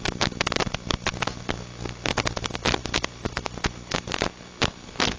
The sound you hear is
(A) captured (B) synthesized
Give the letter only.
A